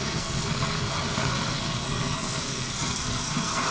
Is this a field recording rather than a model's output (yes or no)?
no